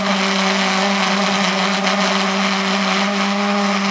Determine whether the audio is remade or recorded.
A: recorded